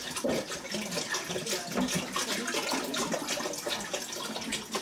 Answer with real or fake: real